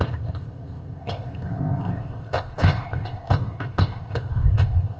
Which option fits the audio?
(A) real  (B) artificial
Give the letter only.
B